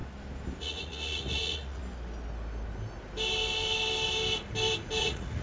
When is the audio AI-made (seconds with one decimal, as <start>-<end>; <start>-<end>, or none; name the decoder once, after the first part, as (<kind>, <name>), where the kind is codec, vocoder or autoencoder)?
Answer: 0.6-1.8 (vocoder, Vocos); 5.0-5.4